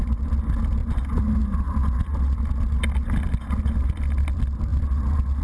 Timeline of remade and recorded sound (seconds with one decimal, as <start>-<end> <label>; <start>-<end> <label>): 0.0-5.4 recorded